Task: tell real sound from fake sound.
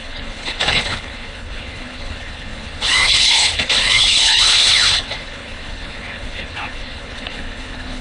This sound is fake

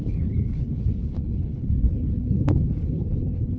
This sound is fake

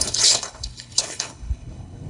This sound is fake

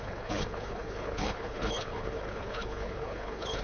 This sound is fake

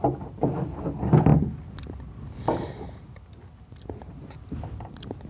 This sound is real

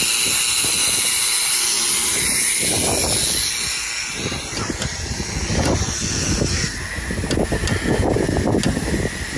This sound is real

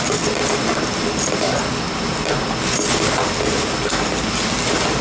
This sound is real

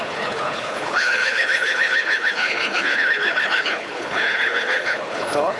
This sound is fake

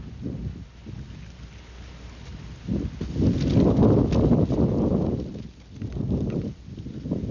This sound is real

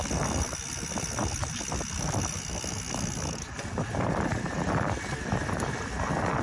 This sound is real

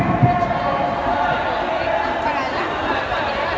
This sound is real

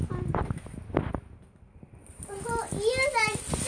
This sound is real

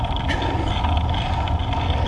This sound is real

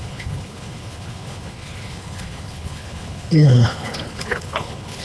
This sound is fake